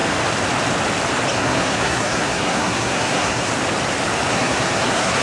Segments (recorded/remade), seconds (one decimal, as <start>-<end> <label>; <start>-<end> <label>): 0.0-1.3 recorded; 1.3-3.5 remade; 3.5-4.3 recorded; 4.3-5.2 remade